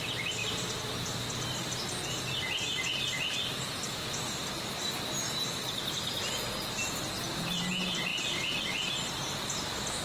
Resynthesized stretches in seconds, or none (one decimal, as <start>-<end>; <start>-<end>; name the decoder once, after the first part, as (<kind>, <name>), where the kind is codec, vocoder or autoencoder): none